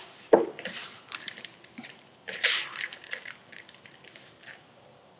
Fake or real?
fake